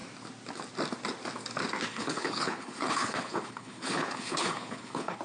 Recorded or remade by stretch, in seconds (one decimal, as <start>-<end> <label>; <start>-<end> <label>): 0.0-1.9 recorded; 1.9-5.2 remade